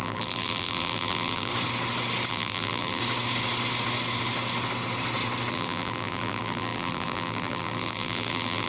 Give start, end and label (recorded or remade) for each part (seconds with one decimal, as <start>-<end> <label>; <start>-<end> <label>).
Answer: 0.0-1.5 remade; 1.5-2.3 recorded; 2.3-3.0 remade; 3.0-5.5 recorded; 5.5-8.7 remade